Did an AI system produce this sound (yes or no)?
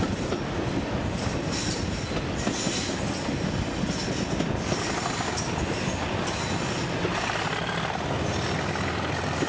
no